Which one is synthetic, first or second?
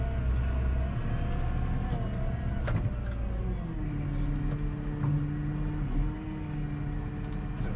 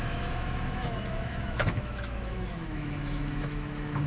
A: second